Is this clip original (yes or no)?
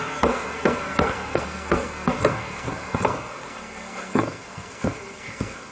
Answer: no